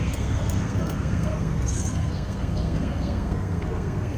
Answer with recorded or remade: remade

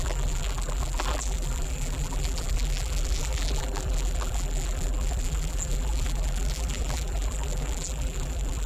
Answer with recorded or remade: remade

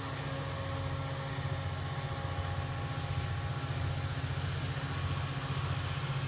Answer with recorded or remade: recorded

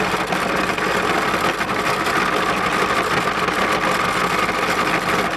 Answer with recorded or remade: recorded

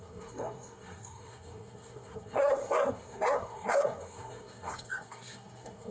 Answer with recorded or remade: remade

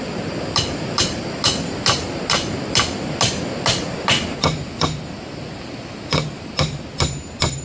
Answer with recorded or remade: recorded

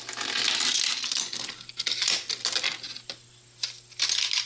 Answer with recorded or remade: recorded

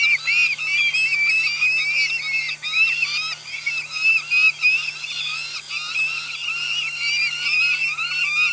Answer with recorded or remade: recorded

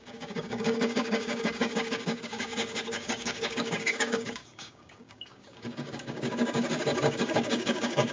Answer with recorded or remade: remade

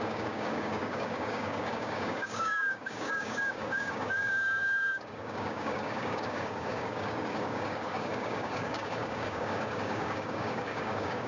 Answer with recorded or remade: remade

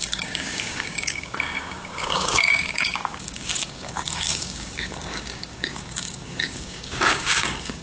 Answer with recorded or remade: remade